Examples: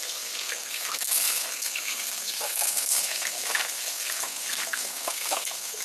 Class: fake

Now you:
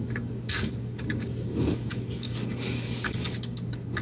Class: fake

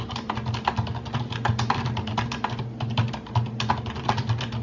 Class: real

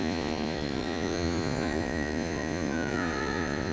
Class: fake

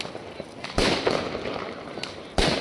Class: real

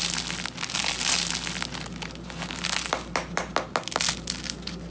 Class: real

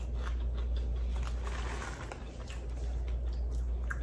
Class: real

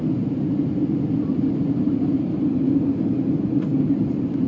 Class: fake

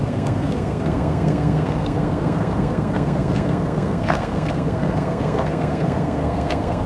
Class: fake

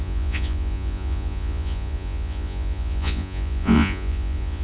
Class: fake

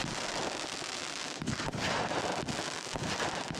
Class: real